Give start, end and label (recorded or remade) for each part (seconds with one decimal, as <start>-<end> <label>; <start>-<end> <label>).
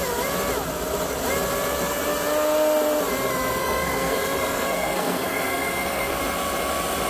0.0-3.6 recorded; 3.6-6.2 remade; 6.2-7.1 recorded